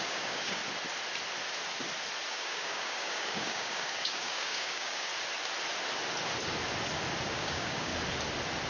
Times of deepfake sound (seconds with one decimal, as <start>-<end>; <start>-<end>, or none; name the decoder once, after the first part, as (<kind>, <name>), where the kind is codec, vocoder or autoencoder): 0.0-0.6 (codec, DAC); 2.3-5.1; 7.3-7.9